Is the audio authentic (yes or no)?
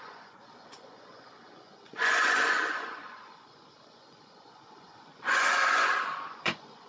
no